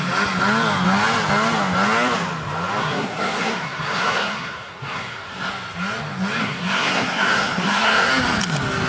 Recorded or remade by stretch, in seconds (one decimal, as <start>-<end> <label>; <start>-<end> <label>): 0.0-2.8 recorded; 2.8-5.5 remade; 5.5-6.4 recorded; 6.4-8.1 remade; 8.1-8.9 recorded

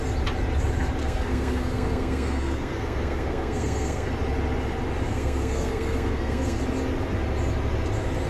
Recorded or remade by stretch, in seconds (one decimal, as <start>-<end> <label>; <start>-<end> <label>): 0.0-1.0 recorded; 1.0-4.1 remade; 4.1-5.1 recorded; 5.1-6.6 remade; 6.6-8.3 recorded

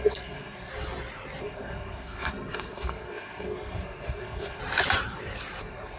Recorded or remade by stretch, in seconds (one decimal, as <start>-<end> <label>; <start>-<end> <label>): 0.0-0.7 remade; 0.7-1.4 recorded; 1.4-4.6 remade; 4.6-5.6 recorded; 5.6-6.0 remade